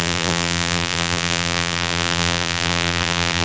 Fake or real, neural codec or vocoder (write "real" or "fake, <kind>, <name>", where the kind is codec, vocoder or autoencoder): fake, vocoder, BigVGAN v2